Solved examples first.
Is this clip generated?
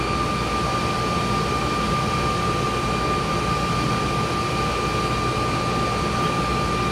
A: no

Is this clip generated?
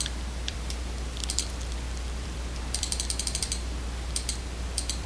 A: yes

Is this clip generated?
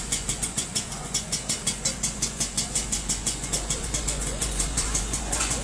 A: yes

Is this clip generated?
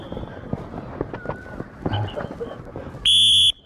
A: no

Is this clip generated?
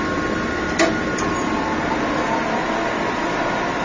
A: no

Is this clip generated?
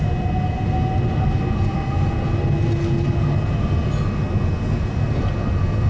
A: no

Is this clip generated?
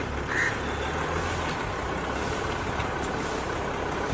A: no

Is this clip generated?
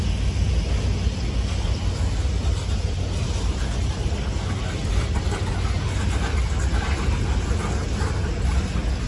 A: no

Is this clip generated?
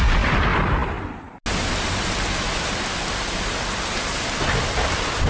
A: no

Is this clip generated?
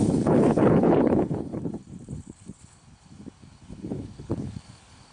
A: yes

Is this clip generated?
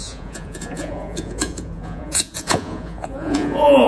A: yes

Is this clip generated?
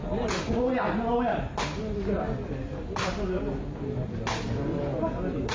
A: no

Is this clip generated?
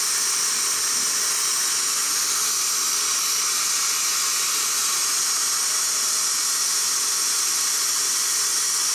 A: no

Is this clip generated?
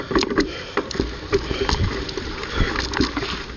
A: no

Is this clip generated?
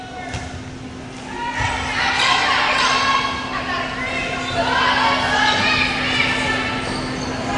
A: no